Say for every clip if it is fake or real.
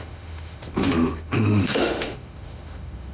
fake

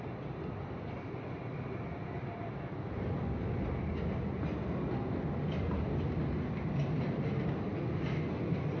real